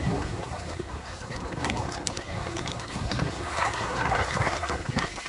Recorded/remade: remade